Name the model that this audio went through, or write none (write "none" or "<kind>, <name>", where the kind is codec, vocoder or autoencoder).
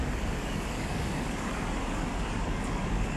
codec, DAC